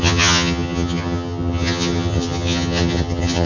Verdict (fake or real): fake